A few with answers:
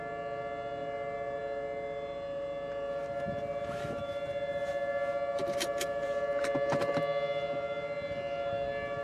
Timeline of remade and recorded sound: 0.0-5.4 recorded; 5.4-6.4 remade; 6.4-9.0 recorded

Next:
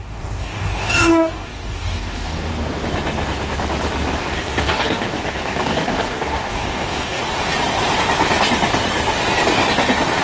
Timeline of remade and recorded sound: 0.0-2.5 remade; 2.5-4.2 recorded; 4.2-7.2 remade; 7.2-10.2 recorded

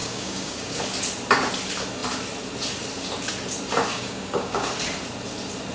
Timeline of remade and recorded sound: 0.0-0.8 remade; 0.8-3.9 recorded; 3.9-4.7 remade; 4.7-5.7 recorded